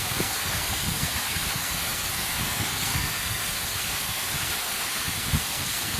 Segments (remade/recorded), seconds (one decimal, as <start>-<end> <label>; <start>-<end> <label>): 0.0-6.0 remade